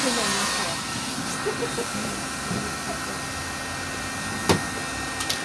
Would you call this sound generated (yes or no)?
no